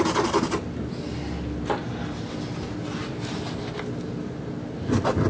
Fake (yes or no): no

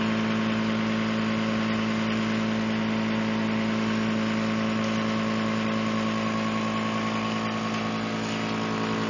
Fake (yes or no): no